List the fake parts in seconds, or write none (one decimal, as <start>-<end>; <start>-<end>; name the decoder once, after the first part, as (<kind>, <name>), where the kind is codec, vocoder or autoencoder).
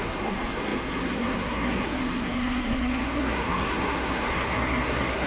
0.0-5.3 (codec, SNAC)